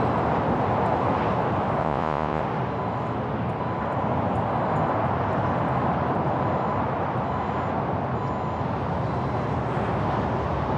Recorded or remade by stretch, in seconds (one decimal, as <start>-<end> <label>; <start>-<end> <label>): 0.0-1.8 recorded; 1.8-2.4 remade; 2.4-10.8 recorded